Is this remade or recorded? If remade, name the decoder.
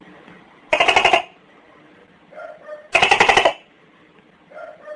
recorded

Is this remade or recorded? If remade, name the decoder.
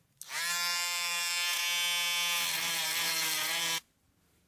recorded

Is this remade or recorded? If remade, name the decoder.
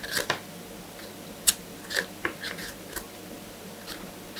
recorded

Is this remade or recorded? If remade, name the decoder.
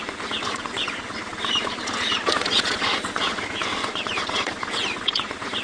remade, vocoder, Vocos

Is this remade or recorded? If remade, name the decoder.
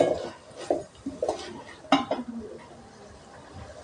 recorded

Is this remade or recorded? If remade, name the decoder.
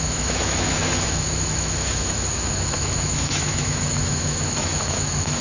remade, autoencoder, DAC-VAE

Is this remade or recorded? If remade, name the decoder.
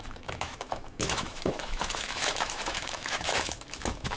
remade, autoencoder, DAC-VAE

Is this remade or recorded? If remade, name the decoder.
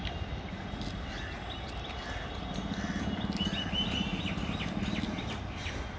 recorded